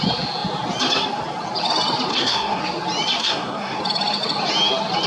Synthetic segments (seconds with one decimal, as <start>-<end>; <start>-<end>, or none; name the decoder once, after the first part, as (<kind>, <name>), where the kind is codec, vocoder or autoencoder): 2.1-2.6 (codec, SNAC); 3.2-3.8